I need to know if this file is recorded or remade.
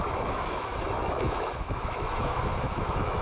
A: remade